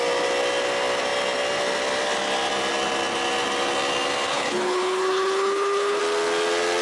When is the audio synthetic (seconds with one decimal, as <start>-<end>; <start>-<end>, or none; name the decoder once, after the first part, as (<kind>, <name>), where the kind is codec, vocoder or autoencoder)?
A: 4.3-6.0 (codec, HILCodec)